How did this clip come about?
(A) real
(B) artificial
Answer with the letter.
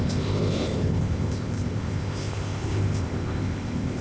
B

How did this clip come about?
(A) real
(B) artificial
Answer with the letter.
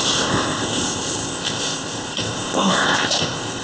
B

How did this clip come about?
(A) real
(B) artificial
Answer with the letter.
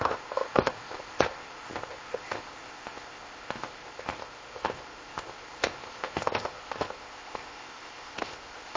B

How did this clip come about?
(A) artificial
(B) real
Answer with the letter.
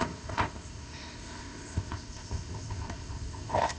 A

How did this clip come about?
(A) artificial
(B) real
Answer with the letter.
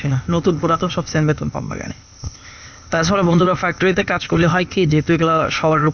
A